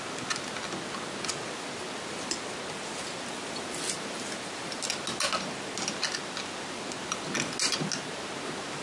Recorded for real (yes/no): yes